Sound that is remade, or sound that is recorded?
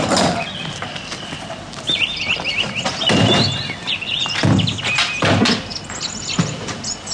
recorded